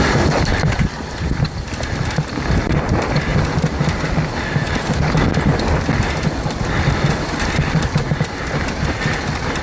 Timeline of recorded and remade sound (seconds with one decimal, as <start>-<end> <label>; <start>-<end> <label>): 0.0-0.5 recorded; 0.5-1.3 remade; 1.3-3.3 recorded; 3.3-4.0 remade; 4.0-9.6 recorded